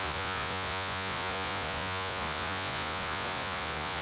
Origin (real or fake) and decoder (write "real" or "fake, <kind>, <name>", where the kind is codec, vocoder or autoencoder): fake, vocoder, Vocos